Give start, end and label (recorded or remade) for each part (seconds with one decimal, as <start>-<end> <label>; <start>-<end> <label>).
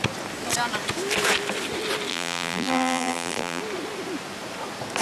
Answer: 0.0-2.1 recorded; 2.1-3.6 remade; 3.6-5.0 recorded